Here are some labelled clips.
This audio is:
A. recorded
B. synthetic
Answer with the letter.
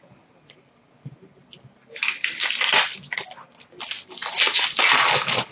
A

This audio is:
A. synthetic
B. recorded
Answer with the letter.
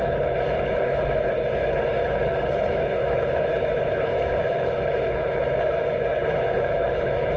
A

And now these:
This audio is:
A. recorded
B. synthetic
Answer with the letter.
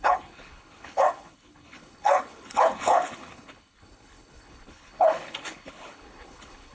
B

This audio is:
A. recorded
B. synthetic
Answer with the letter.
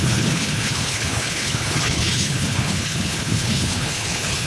B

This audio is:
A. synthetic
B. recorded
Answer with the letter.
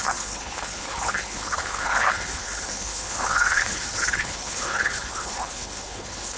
A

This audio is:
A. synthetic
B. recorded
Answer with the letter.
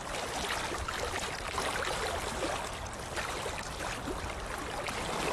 B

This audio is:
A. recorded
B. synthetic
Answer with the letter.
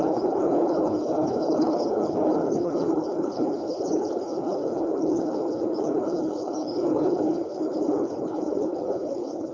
B